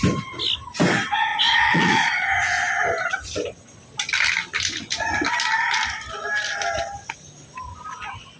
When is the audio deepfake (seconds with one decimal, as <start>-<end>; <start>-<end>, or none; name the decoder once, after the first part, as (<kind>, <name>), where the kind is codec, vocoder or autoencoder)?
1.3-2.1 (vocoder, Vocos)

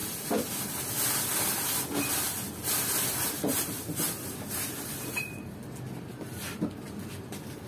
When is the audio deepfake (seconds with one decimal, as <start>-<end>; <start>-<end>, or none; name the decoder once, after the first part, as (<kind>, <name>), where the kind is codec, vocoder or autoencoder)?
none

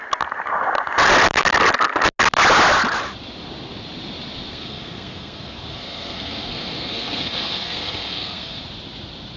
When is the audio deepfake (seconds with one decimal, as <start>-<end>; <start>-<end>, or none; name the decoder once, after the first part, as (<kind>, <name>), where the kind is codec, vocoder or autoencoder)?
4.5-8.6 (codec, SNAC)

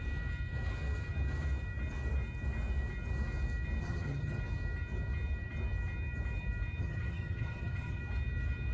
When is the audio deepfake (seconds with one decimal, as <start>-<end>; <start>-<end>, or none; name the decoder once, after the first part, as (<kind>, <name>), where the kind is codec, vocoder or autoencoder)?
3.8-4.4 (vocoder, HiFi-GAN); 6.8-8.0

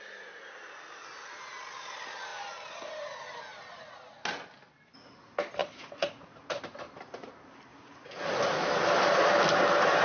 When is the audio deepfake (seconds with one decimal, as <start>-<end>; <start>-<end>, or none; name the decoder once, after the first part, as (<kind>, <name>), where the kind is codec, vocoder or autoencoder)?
5.6-6.6 (vocoder, Vocos); 7.7-8.7